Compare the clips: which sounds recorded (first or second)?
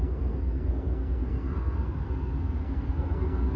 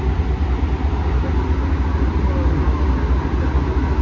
second